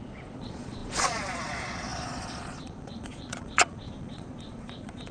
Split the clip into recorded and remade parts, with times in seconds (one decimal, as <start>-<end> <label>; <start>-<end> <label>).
0.0-5.1 remade